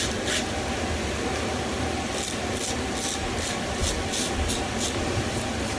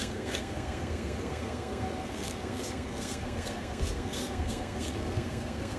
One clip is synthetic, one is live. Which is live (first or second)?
first